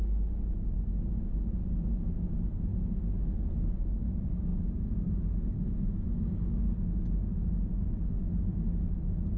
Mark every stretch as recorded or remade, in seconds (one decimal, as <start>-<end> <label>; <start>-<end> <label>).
0.0-9.4 recorded